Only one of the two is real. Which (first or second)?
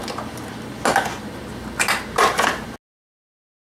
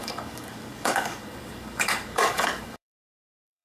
first